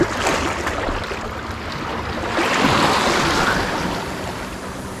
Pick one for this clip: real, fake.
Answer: real